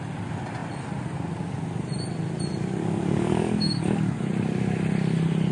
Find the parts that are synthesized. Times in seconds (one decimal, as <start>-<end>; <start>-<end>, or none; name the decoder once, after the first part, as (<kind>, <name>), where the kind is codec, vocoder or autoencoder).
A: 2.8-4.3 (codec, DAC)